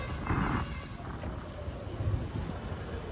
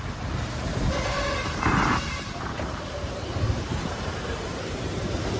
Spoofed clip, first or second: second